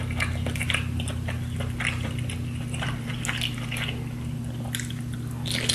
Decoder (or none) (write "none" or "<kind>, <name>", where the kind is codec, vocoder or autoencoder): none